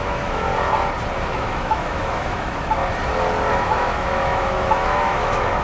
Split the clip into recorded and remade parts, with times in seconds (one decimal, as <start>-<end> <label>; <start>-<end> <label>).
0.0-0.5 remade; 0.5-1.3 recorded; 1.3-2.8 remade; 2.8-3.5 recorded; 3.5-5.6 remade